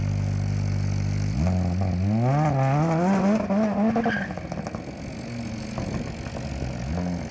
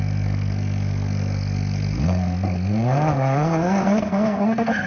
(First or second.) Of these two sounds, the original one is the first